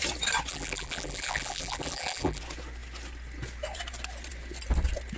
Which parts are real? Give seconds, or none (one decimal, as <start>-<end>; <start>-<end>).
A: 0.0-0.5; 2.4-5.2